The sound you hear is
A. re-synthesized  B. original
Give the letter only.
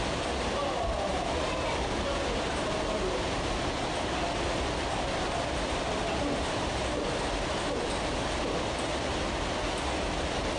B